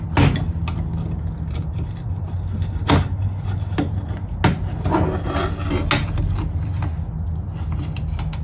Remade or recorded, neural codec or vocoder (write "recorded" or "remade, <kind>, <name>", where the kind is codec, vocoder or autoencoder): recorded